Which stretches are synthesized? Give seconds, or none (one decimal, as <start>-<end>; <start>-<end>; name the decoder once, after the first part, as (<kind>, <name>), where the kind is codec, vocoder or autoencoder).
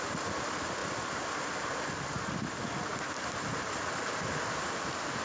none